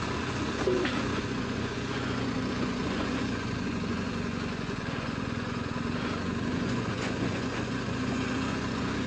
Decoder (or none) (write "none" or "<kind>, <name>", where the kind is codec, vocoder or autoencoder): vocoder, Vocos